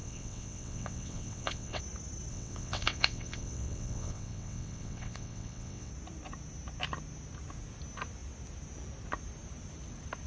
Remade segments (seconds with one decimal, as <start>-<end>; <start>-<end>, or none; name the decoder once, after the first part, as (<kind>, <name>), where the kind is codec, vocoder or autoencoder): 0.0-1.8 (vocoder, WaveNeXt); 2.3-5.9